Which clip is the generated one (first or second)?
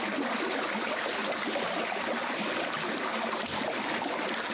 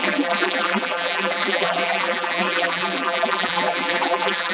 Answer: second